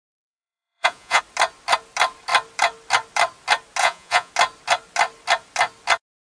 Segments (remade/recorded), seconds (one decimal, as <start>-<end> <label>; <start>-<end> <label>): 0.0-1.2 remade; 1.2-3.8 recorded; 3.8-4.3 remade; 4.3-6.2 recorded